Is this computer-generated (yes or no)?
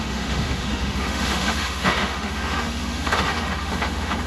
yes